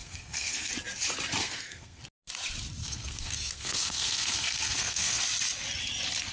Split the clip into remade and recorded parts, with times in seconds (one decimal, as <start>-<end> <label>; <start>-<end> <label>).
0.0-0.7 remade; 0.7-1.4 recorded; 1.4-2.0 remade; 2.0-2.8 recorded; 2.8-5.2 remade; 5.2-6.3 recorded